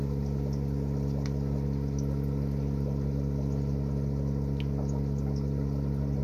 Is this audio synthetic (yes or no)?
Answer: no